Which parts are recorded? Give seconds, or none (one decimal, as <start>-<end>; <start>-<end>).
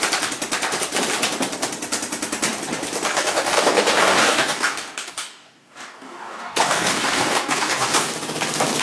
0.0-3.1; 8.1-8.8